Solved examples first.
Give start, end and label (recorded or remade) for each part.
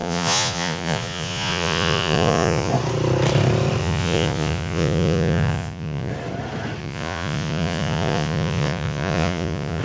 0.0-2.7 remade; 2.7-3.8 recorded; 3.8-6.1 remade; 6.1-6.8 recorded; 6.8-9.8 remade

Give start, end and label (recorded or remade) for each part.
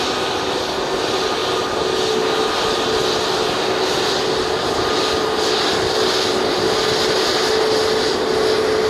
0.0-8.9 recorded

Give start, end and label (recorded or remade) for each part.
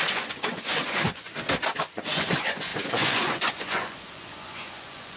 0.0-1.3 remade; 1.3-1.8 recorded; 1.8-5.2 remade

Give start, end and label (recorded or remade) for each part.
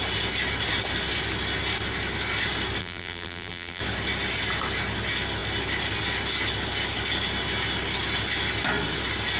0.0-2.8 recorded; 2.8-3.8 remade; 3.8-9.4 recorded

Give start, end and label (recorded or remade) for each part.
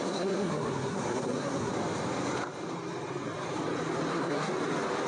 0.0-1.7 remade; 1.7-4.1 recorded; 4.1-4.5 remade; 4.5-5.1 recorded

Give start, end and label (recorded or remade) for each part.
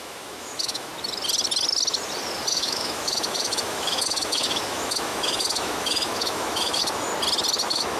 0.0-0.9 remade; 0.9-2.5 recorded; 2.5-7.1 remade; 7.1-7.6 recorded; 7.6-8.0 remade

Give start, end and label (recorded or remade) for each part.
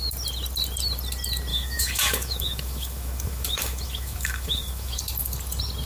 0.0-1.5 recorded; 1.5-5.0 remade; 5.0-5.9 recorded